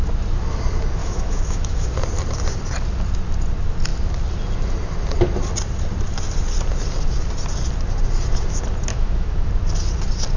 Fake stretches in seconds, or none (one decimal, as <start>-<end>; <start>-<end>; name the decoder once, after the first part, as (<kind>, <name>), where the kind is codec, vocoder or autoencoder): 1.0-1.9 (autoencoder, DAC-VAE); 8.9-9.5